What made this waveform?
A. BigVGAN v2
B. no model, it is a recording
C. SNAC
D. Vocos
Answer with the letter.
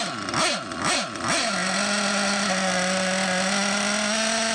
B